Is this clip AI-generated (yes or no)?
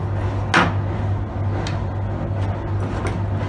no